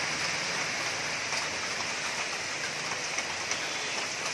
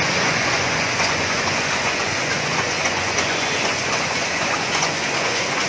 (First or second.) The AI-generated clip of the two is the second